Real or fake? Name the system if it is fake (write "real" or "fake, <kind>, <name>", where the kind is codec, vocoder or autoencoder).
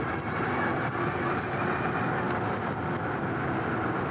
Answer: real